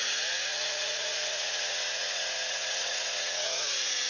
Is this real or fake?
fake